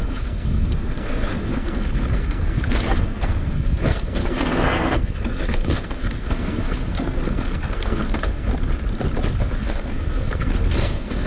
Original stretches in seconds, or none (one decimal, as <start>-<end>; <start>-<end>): 8.5-9.6